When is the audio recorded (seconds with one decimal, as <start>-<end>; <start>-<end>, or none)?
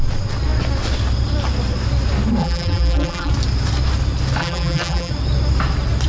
0.0-2.4; 3.3-4.4; 5.1-6.1